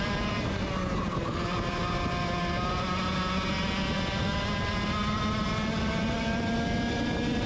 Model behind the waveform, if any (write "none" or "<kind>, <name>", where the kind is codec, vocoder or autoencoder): none